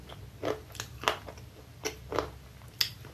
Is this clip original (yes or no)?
yes